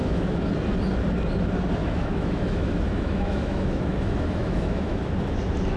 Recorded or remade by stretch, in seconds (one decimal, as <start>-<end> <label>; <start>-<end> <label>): 0.0-0.5 remade; 0.5-1.8 recorded; 1.8-5.0 remade; 5.0-5.8 recorded